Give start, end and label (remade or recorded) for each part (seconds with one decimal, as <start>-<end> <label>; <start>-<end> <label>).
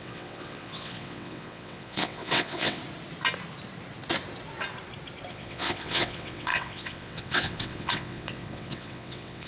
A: 0.0-2.8 remade; 2.8-5.3 recorded; 5.3-9.5 remade